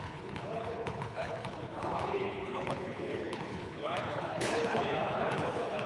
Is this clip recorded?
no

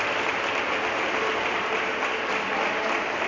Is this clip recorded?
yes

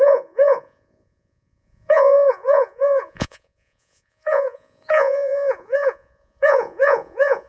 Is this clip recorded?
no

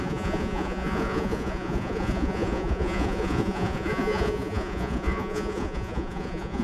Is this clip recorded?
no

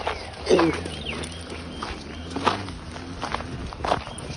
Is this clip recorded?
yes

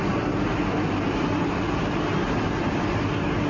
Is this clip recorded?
yes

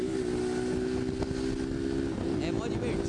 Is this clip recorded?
yes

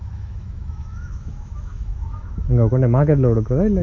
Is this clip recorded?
no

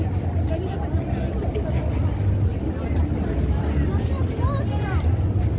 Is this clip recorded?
yes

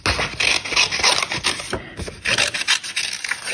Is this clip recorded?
yes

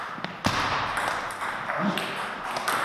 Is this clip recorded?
yes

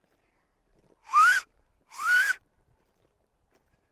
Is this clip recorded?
no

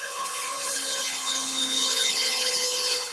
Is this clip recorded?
no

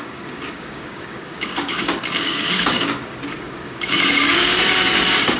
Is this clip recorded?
no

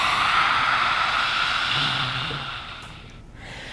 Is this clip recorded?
no